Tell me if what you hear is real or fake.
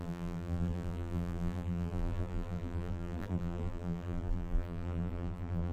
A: fake